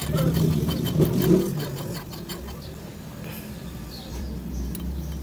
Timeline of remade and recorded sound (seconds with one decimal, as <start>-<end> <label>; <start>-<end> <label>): 0.0-3.3 recorded; 3.3-4.5 remade; 4.5-5.2 recorded